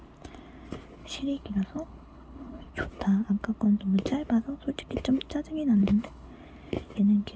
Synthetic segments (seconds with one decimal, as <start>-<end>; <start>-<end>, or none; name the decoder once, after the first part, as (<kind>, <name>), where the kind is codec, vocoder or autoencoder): 1.0-2.7 (codec, HILCodec); 5.8-6.3